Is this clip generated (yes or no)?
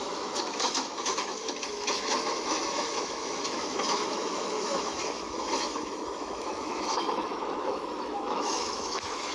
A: yes